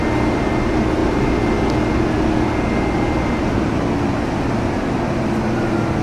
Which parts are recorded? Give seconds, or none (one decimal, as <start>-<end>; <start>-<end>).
0.0-6.0